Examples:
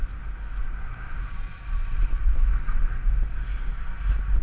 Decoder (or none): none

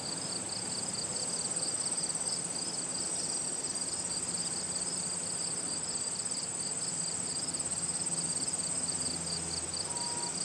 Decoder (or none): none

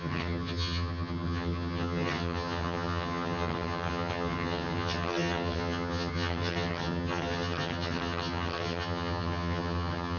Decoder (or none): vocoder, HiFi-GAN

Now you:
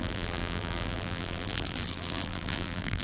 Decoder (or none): vocoder, BigVGAN v2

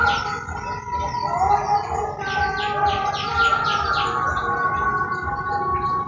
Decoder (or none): none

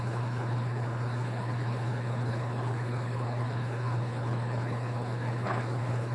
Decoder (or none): codec, HILCodec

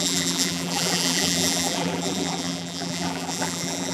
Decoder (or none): vocoder, BigVGAN v2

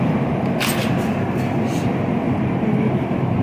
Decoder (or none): none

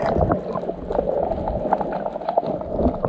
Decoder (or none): none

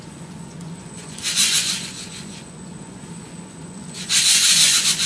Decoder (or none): vocoder, Vocos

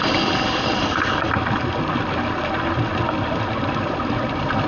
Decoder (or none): none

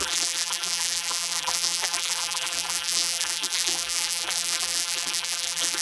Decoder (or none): vocoder, BigVGAN v2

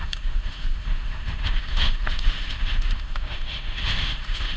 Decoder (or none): autoencoder, DAC-VAE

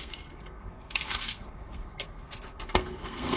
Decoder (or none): codec, SNAC